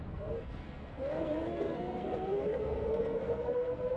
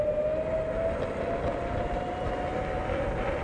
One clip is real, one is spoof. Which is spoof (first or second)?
first